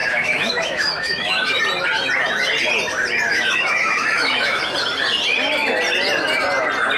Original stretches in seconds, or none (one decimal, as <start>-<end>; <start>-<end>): 1.6-3.3; 4.6-7.0